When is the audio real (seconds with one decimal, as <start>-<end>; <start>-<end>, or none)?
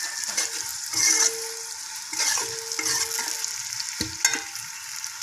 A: 0.0-5.2